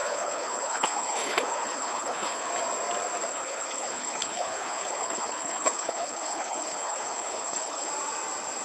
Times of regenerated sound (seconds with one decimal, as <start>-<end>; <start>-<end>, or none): 0.0-2.5; 3.3-7.9

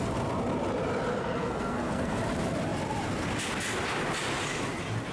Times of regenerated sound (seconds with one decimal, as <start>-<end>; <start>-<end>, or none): 1.1-2.2

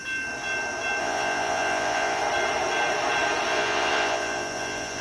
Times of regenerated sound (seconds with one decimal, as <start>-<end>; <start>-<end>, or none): 1.0-2.2; 3.5-5.0

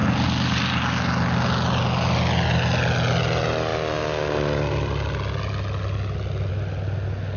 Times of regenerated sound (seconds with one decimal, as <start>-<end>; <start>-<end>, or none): none

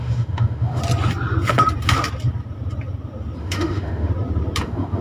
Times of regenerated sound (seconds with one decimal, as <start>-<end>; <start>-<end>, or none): 0.0-0.8; 3.4-4.1; 4.6-5.0

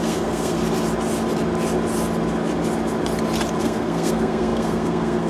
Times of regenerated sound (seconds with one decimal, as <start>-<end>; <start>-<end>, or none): 0.0-0.6; 3.6-5.3